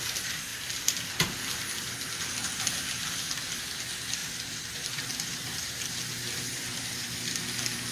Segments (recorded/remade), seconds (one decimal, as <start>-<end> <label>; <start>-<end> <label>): 0.0-4.2 recorded; 4.2-6.9 remade; 6.9-7.9 recorded